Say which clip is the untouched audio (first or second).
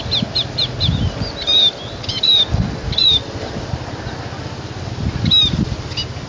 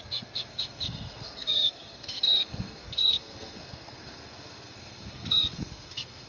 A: first